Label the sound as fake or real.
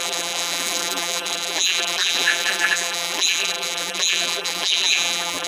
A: fake